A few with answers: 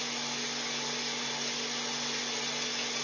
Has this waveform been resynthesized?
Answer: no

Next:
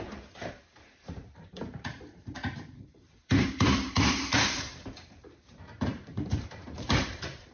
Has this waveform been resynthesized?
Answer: yes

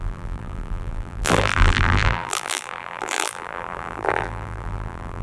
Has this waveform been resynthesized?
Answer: yes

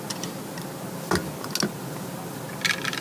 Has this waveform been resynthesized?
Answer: no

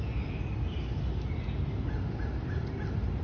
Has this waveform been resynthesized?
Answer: no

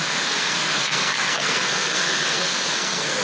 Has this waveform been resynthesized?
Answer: yes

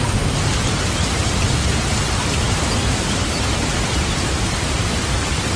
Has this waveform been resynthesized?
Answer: no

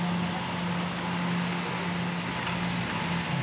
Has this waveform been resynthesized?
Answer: no